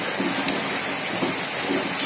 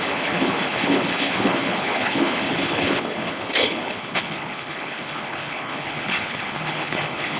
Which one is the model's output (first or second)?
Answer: second